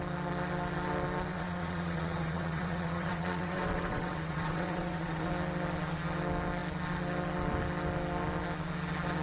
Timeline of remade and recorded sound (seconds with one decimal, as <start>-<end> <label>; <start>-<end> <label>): 0.0-1.3 recorded; 1.3-5.3 remade; 5.3-9.2 recorded